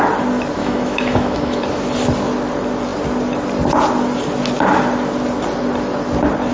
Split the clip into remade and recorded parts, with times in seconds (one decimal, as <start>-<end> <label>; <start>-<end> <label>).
0.0-0.6 recorded; 0.6-1.6 remade; 1.6-6.5 recorded